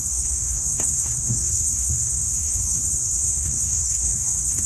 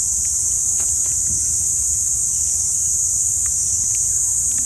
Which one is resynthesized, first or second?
first